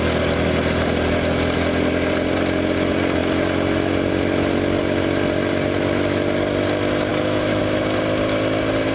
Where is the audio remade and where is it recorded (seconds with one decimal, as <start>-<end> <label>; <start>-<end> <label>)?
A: 0.0-7.1 recorded; 7.1-7.6 remade; 7.6-8.9 recorded